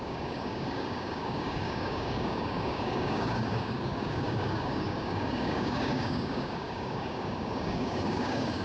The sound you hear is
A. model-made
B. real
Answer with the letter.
A